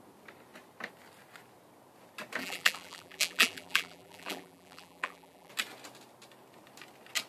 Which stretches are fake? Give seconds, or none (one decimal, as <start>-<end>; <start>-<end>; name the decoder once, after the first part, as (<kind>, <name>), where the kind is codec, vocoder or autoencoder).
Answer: 2.4-5.5 (vocoder, BigVGAN v2)